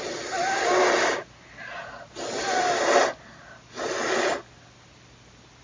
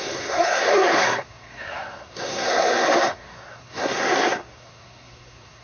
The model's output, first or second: second